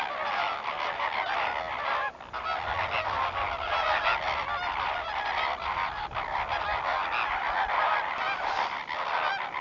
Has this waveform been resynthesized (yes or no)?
no